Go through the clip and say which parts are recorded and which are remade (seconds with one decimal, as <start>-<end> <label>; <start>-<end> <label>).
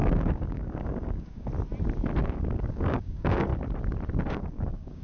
0.0-1.5 remade; 1.5-2.2 recorded; 2.2-3.5 remade; 3.5-4.3 recorded; 4.3-5.0 remade